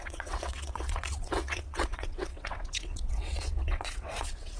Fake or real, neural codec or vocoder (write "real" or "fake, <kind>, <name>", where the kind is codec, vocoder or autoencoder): fake, vocoder, WaveNeXt